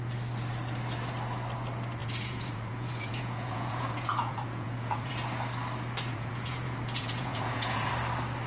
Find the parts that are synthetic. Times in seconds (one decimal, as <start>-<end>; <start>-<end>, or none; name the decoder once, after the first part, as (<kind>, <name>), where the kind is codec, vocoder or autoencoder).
2.0-5.1 (vocoder, Vocos); 6.1-7.9

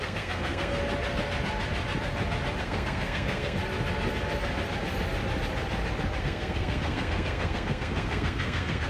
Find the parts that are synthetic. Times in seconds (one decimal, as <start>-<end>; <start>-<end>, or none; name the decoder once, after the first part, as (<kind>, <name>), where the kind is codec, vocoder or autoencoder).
0.0-0.8 (codec, SNAC); 2.6-3.6; 6.2-8.9